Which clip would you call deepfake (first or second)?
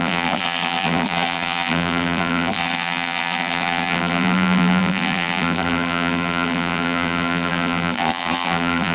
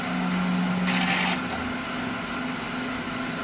first